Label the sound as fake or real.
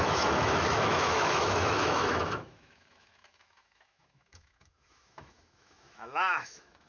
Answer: fake